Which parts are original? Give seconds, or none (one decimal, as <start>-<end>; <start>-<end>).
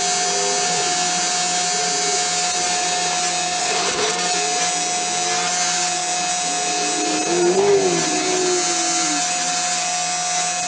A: 0.0-3.6; 4.1-10.7